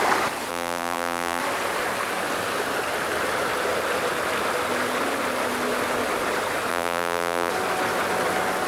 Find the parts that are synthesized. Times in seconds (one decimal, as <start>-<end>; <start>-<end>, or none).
0.5-1.4; 6.7-7.5